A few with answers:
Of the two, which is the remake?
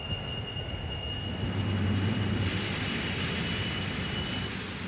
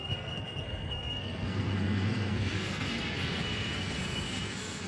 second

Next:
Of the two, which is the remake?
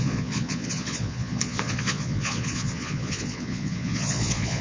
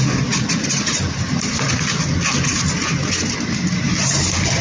first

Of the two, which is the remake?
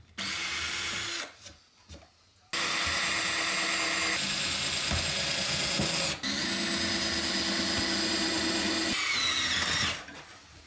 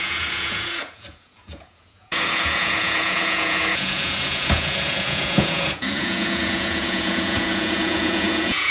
second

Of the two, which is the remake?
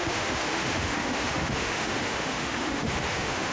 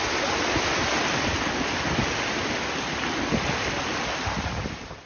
first